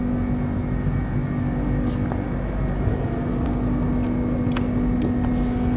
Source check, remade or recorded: recorded